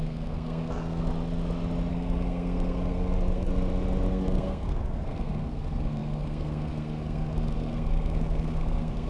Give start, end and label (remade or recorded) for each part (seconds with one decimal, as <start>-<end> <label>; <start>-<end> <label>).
0.0-1.1 remade; 1.1-1.9 recorded; 1.9-3.5 remade; 3.5-4.1 recorded; 4.1-9.1 remade